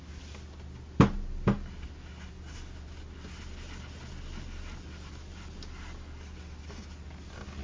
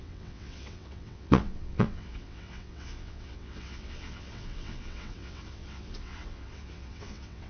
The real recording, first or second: first